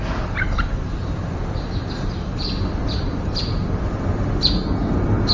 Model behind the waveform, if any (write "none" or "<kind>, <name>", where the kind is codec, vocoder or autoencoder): none